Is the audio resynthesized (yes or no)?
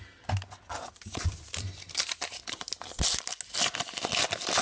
no